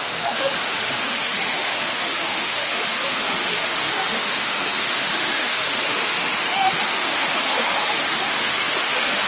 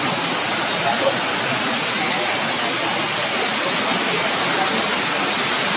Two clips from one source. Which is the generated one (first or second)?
first